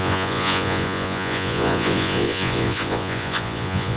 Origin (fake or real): fake